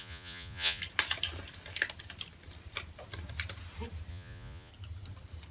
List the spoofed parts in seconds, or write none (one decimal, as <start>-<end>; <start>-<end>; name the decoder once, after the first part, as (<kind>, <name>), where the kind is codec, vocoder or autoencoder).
0.0-0.8 (vocoder, Vocos); 4.1-4.7